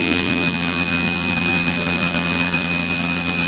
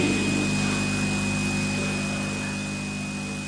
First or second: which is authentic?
second